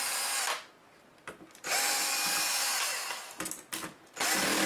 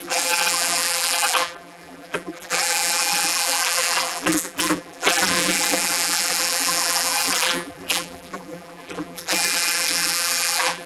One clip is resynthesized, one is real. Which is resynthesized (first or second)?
second